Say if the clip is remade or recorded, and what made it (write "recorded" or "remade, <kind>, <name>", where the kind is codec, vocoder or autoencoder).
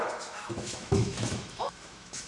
remade, autoencoder, DAC-VAE